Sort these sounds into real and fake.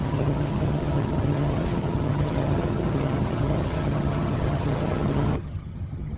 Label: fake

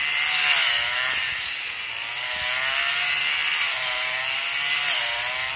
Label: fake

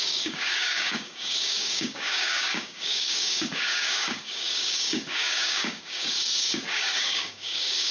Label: fake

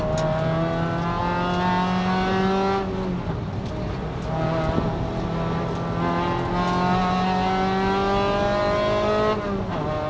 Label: real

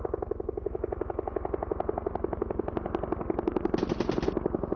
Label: real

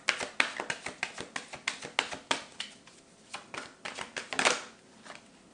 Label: real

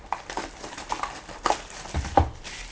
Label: real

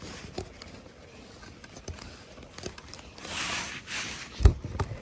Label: real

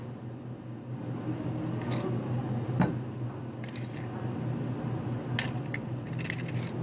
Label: real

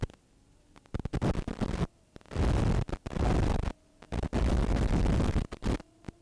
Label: real